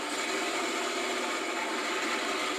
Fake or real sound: real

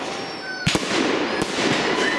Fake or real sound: real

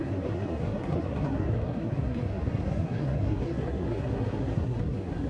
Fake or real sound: fake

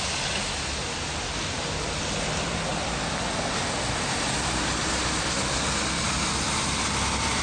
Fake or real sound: real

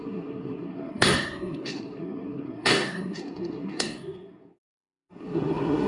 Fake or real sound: fake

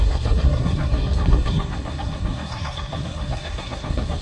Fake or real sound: fake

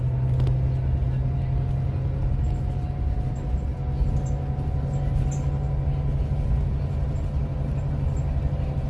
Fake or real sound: real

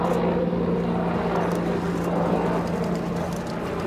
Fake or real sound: real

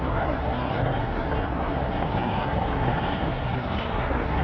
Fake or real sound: fake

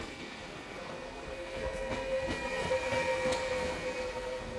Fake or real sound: fake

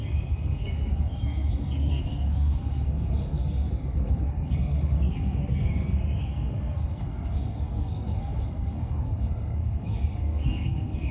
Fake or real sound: fake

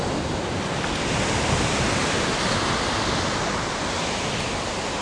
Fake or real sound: real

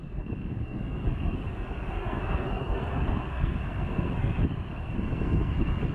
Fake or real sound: fake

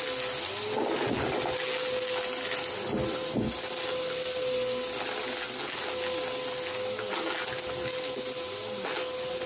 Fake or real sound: real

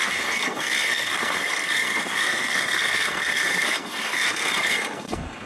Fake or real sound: fake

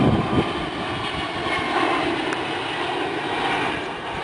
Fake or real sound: real